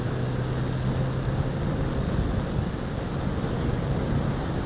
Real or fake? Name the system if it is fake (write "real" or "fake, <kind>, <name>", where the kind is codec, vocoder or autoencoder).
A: real